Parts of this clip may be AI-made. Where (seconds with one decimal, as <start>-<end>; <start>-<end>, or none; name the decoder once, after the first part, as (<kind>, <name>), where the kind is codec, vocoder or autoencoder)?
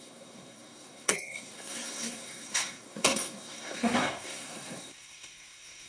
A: 0.0-5.9 (codec, SNAC)